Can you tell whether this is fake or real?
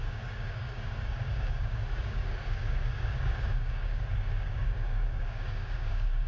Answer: fake